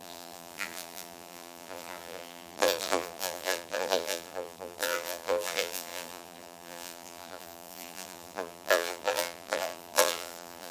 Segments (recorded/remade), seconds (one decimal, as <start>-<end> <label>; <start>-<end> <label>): 0.0-10.7 remade